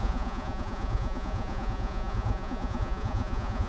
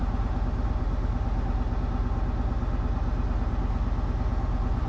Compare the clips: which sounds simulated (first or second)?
first